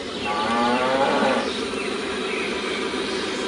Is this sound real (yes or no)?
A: no